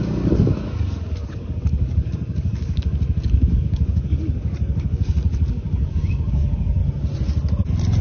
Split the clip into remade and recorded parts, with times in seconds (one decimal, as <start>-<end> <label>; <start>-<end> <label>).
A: 0.0-6.8 remade; 6.8-8.0 recorded